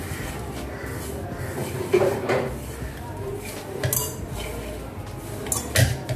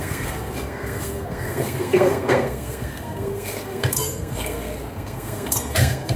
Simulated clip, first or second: second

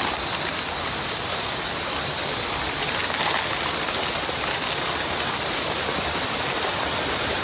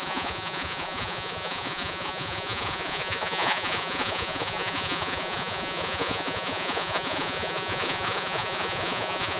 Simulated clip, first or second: second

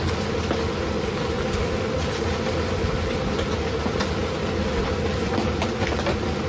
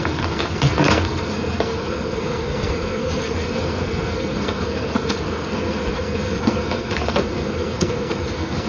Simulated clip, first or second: second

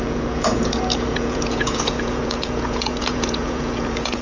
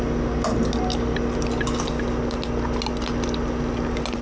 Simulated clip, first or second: first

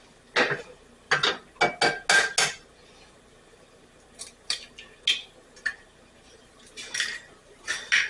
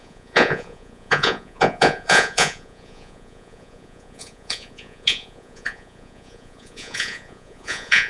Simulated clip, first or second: second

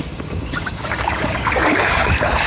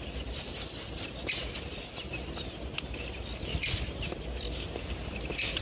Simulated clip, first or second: first